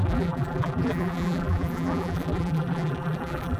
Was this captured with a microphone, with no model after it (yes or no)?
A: no